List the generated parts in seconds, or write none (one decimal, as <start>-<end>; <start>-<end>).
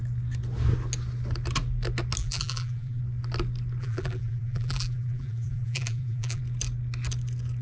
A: 2.2-3.0; 3.8-6.4